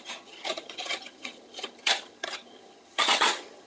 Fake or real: fake